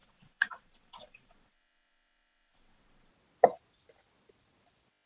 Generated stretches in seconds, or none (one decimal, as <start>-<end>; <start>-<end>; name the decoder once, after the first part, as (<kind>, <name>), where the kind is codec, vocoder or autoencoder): 0.0-3.1 (vocoder, Vocos)